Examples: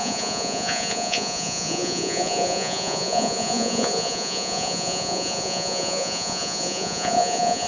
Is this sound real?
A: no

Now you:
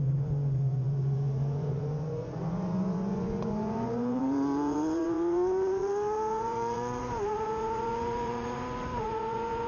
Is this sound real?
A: no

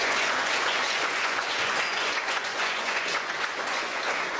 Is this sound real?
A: no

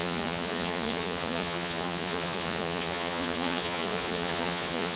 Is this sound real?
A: no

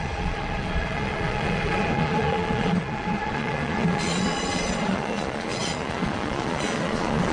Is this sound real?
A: no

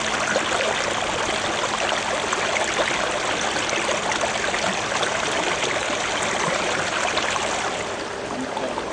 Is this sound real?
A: yes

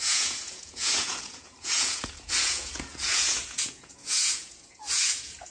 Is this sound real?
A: no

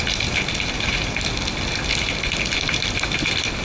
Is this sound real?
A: yes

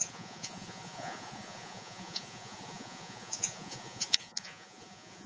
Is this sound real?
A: no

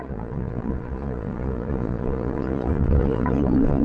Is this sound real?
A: no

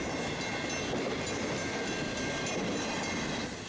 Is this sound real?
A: yes